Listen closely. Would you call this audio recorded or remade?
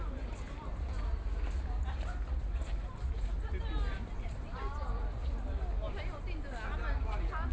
recorded